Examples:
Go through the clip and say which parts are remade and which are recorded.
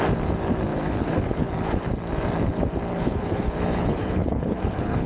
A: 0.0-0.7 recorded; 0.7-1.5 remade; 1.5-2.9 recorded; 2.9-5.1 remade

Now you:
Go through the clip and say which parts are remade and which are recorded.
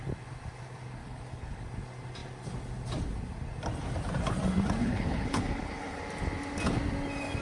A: 0.0-1.0 recorded; 1.0-1.6 remade; 1.6-4.8 recorded; 4.8-6.0 remade; 6.0-7.4 recorded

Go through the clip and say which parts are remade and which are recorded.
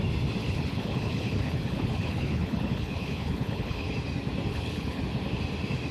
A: 0.0-0.4 recorded; 0.4-3.9 remade; 3.9-4.5 recorded; 4.5-5.0 remade; 5.0-5.9 recorded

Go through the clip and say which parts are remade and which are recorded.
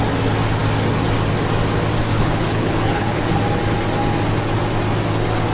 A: 0.0-2.1 recorded; 2.1-3.4 remade; 3.4-5.5 recorded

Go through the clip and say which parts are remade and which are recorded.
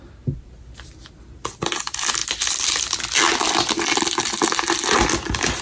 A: 0.0-5.6 recorded